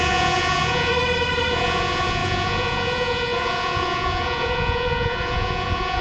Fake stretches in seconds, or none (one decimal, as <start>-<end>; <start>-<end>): 0.0-0.9; 1.5-6.0